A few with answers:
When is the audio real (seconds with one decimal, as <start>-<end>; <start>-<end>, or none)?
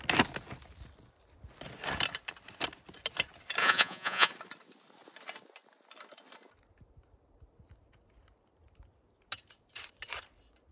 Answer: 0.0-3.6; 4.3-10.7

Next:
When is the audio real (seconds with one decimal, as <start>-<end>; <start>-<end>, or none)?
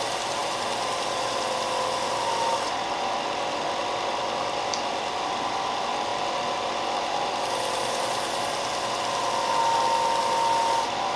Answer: 0.0-11.2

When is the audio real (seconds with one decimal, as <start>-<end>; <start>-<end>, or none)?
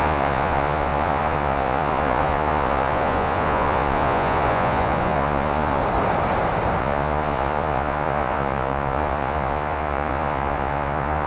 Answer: 5.8-6.8